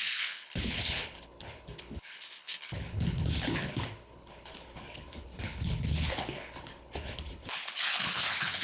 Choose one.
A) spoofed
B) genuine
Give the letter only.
A